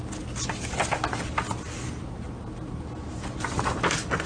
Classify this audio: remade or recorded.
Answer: recorded